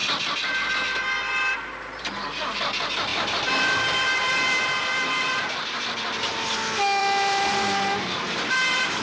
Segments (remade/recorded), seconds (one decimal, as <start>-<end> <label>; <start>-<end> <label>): 0.0-3.1 recorded; 3.1-5.8 remade; 5.8-7.0 recorded; 7.0-9.0 remade